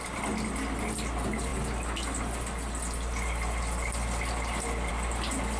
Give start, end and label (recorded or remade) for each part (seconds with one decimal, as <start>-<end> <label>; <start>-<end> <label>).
0.0-5.6 recorded